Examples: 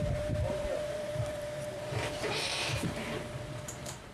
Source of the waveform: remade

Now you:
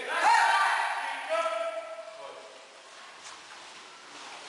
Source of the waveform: recorded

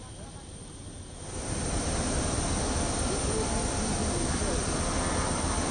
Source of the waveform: remade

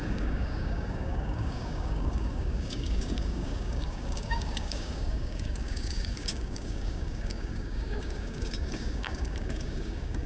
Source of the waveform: remade